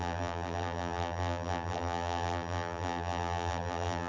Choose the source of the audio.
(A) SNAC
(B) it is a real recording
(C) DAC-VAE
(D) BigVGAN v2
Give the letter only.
D